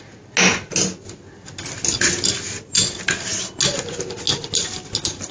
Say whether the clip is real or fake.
real